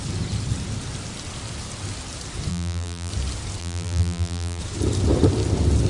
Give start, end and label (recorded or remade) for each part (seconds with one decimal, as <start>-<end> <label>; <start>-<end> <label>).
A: 0.0-2.5 recorded; 2.5-3.1 remade; 3.1-3.6 recorded; 3.6-4.6 remade; 4.6-5.9 recorded